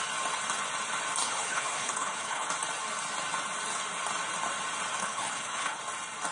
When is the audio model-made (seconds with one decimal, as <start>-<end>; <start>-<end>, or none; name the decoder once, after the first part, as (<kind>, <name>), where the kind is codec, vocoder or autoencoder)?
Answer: 1.2-2.5 (codec, HILCodec); 5.0-5.8